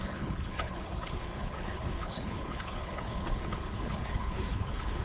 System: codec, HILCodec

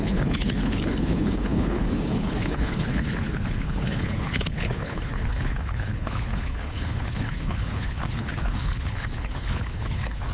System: codec, HILCodec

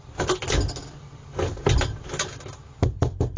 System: none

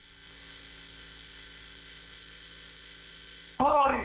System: codec, HILCodec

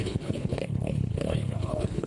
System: codec, HILCodec